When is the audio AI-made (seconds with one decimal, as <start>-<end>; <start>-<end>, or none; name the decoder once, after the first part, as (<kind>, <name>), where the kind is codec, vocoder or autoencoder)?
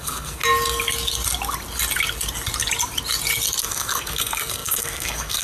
0.0-0.4 (codec, SNAC); 3.6-5.4